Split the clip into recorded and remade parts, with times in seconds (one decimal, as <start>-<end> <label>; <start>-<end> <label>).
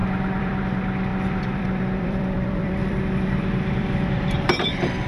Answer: 0.0-0.6 remade; 0.6-1.1 recorded; 1.1-3.0 remade; 3.0-3.8 recorded; 3.8-5.1 remade